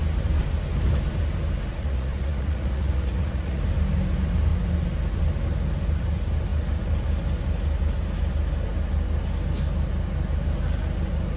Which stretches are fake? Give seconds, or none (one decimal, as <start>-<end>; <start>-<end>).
1.7-3.6